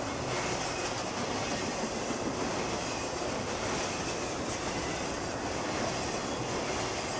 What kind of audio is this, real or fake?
real